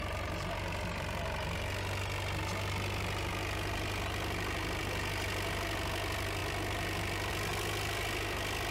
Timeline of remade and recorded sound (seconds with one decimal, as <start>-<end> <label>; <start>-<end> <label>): 0.0-6.4 recorded; 6.4-7.3 remade; 7.3-8.7 recorded

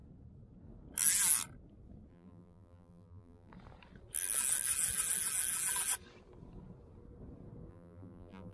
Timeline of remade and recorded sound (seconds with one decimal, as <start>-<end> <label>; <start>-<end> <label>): 0.0-2.1 recorded; 2.1-3.5 remade; 3.5-7.7 recorded; 7.7-8.5 remade

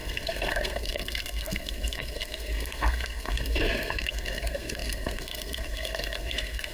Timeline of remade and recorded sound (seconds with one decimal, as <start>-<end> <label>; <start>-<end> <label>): 0.0-6.7 remade